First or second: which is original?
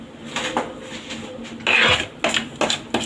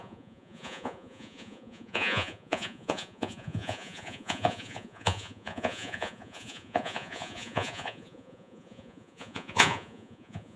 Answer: first